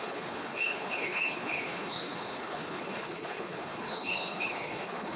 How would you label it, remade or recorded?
remade